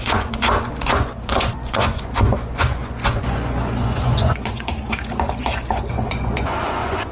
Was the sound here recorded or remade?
remade